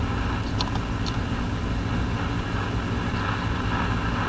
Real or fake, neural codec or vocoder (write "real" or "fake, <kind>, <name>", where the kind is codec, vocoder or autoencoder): real